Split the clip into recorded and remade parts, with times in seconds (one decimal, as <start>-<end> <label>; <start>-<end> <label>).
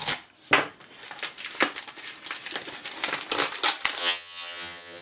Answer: 0.0-4.0 recorded; 4.0-5.0 remade